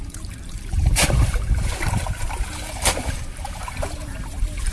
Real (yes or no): no